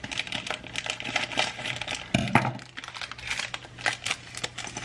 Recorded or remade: recorded